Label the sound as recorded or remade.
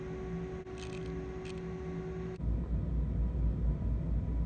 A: recorded